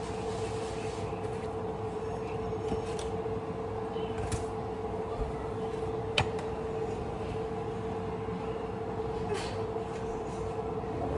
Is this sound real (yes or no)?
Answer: yes